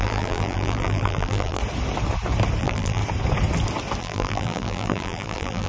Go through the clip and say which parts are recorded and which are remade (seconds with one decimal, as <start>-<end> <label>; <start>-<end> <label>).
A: 0.0-1.6 remade; 1.6-2.6 recorded; 2.6-3.0 remade; 3.0-4.0 recorded; 4.0-5.7 remade